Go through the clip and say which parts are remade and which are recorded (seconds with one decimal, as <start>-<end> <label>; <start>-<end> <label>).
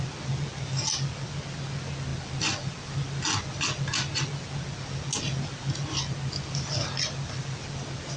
0.0-8.2 recorded